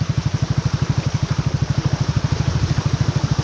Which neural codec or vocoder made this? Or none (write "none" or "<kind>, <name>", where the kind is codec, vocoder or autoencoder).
vocoder, BigVGAN v2